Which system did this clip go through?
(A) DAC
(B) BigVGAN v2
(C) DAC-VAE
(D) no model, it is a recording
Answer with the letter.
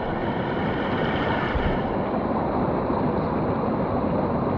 D